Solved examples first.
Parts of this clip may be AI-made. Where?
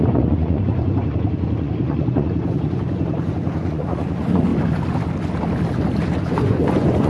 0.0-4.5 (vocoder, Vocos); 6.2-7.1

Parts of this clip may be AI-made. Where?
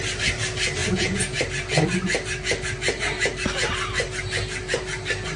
0.8-1.4 (vocoder, Vocos)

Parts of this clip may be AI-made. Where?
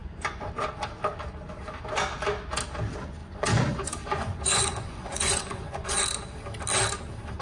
0.0-0.5 (vocoder, Vocos); 3.2-6.0